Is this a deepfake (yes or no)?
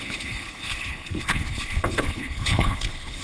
yes